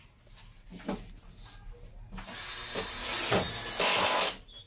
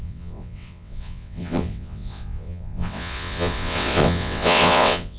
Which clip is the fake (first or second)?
second